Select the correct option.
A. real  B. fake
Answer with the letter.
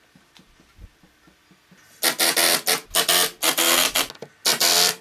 A